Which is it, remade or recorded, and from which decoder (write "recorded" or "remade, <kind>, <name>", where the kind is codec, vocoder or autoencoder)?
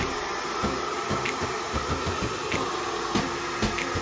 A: recorded